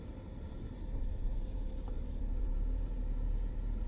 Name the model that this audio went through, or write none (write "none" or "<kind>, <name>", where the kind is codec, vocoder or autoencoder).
vocoder, BigVGAN v2